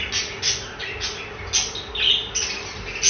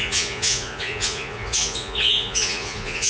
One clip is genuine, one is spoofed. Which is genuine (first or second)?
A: first